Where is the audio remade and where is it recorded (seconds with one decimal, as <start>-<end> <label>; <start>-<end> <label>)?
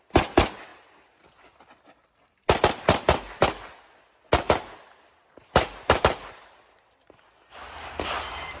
0.0-8.6 recorded